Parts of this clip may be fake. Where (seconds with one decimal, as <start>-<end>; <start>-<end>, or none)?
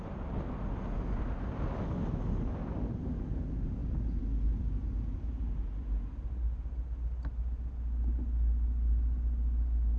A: none